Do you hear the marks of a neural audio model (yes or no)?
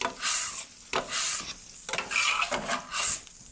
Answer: no